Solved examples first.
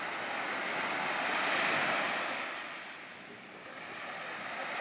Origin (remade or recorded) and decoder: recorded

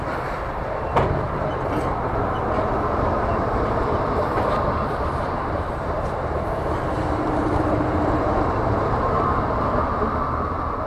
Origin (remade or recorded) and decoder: remade, vocoder, BigVGAN v2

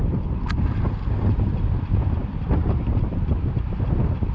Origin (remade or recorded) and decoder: recorded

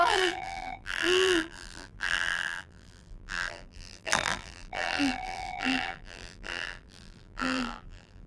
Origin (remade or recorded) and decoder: remade, vocoder, BigVGAN v2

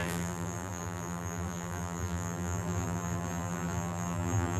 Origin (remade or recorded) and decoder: remade, vocoder, BigVGAN v2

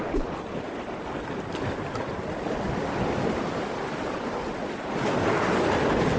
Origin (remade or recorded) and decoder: remade, vocoder, BigVGAN v2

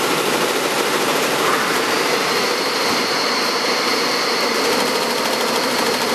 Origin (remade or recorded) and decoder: remade, vocoder, BigVGAN v2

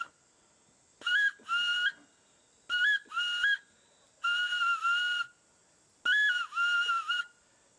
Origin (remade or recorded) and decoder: recorded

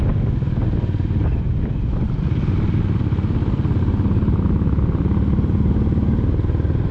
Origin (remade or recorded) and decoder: recorded